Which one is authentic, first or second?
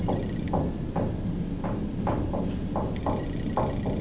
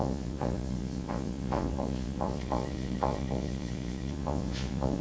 first